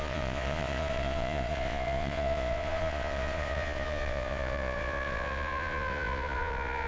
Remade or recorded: remade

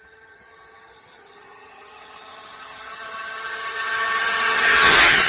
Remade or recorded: remade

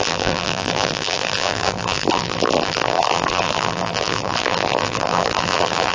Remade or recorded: remade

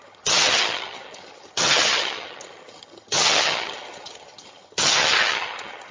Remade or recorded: remade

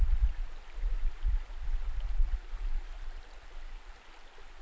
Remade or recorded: remade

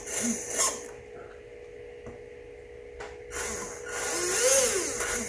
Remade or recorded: recorded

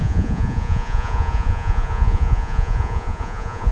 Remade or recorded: remade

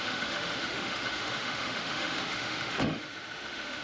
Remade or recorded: remade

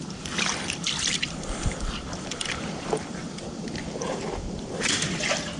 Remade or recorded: remade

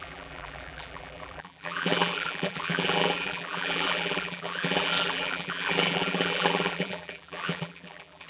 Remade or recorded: remade